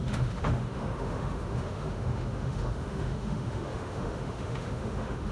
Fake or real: fake